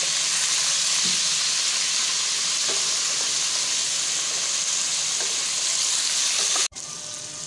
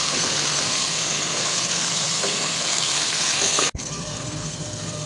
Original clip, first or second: first